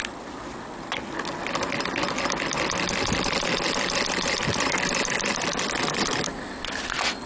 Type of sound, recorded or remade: recorded